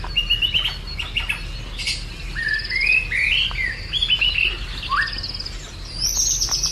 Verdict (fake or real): real